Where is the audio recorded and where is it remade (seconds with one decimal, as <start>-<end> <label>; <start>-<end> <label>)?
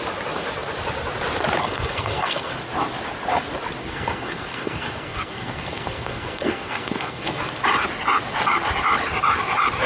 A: 0.0-1.6 recorded; 1.6-2.5 remade; 2.5-3.8 recorded; 3.8-7.4 remade; 7.4-9.9 recorded